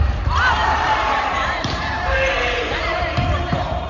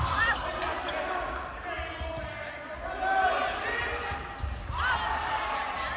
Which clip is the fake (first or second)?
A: first